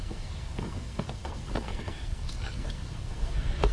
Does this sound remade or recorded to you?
remade